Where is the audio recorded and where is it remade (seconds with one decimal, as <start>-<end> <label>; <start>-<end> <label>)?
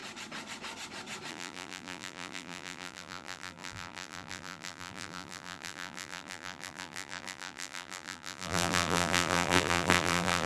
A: 0.0-1.3 recorded; 1.3-10.5 remade